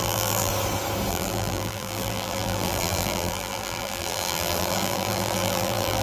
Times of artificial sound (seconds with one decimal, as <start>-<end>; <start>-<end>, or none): 0.0-0.5; 1.1-6.0